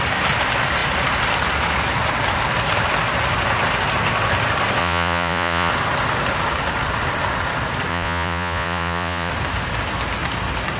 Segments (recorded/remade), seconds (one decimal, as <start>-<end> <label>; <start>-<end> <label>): 0.0-4.8 recorded; 4.8-5.7 remade; 5.7-7.9 recorded; 7.9-9.3 remade; 9.3-10.8 recorded